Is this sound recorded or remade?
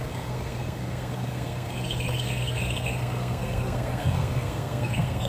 remade